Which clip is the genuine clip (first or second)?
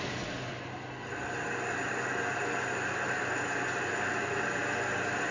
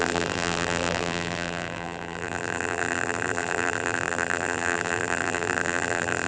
first